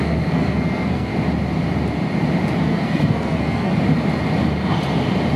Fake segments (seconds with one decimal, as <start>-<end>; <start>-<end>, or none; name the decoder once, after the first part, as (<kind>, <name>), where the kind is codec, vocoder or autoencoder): 0.0-1.1 (codec, SNAC); 2.6-3.7